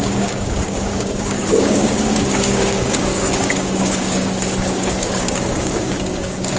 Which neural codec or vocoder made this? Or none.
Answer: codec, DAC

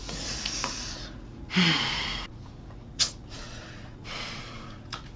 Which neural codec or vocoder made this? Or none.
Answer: vocoder, Vocos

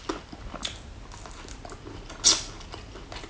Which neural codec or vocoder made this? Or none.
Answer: none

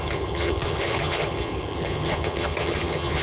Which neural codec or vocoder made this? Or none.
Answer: vocoder, HiFi-GAN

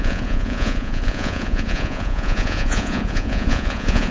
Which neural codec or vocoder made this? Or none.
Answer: vocoder, Vocos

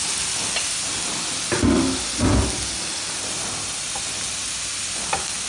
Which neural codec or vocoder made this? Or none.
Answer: none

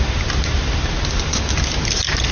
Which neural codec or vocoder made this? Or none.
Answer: none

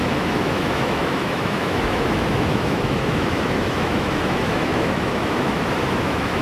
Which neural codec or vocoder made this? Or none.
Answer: autoencoder, DAC-VAE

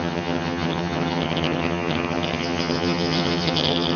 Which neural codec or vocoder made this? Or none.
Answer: vocoder, HiFi-GAN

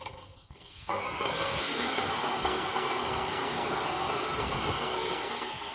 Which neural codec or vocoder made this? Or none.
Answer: codec, SNAC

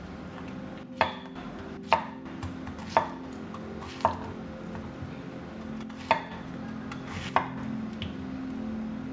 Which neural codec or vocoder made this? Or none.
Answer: none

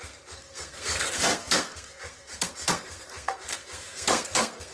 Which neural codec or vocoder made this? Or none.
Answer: codec, SNAC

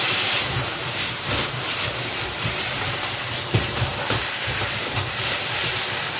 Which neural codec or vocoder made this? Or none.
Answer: vocoder, BigVGAN v2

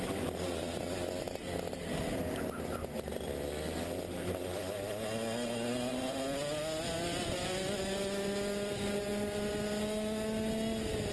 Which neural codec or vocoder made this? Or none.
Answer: none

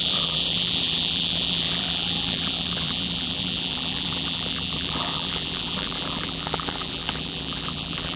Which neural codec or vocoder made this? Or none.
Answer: vocoder, BigVGAN v2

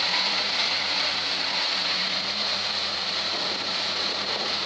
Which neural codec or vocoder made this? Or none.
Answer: vocoder, Vocos